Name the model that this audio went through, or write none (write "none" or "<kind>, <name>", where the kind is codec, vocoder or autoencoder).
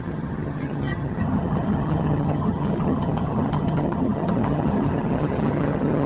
vocoder, HiFi-GAN